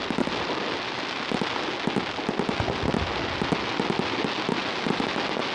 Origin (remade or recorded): recorded